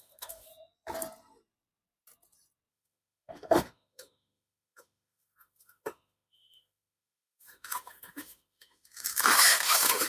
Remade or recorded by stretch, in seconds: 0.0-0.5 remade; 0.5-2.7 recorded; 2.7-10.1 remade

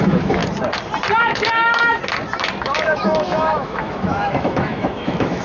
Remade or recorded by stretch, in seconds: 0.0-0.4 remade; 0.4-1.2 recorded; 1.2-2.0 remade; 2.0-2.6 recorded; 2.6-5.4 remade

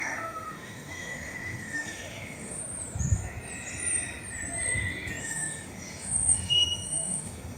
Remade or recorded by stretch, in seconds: 0.0-2.6 remade; 2.6-5.2 recorded; 5.2-7.6 remade

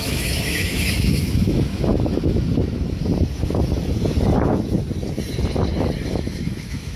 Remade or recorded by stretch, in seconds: 0.0-1.9 remade; 1.9-6.1 recorded; 6.1-7.0 remade

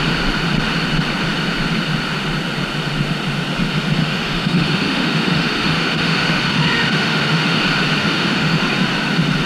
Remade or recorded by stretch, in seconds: 0.0-4.0 recorded; 4.0-7.6 remade; 7.6-8.0 recorded; 8.0-8.6 remade; 8.6-9.5 recorded

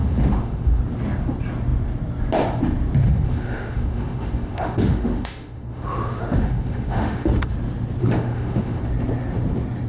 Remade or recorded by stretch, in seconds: 0.0-0.8 remade; 0.8-3.0 recorded; 3.0-7.5 remade; 7.5-8.0 recorded; 8.0-8.8 remade; 8.8-9.9 recorded

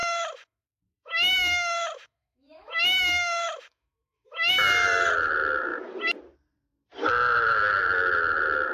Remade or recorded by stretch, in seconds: 0.0-4.5 remade; 4.5-8.7 recorded